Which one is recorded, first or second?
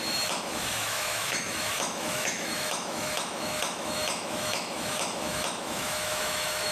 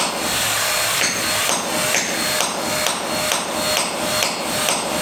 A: second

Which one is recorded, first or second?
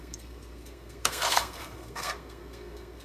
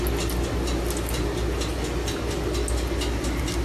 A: second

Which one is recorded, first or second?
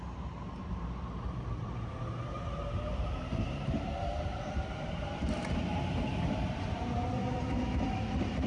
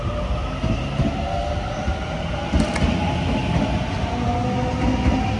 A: second